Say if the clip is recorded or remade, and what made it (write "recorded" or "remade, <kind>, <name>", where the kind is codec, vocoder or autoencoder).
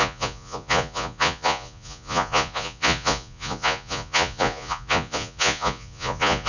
remade, vocoder, Vocos